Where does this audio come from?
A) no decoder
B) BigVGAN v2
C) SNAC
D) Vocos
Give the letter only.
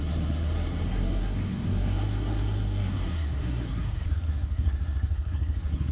C